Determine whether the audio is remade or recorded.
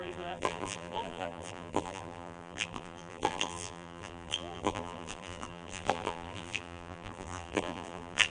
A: remade